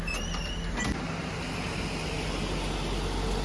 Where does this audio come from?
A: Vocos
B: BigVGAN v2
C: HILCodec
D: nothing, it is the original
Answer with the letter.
D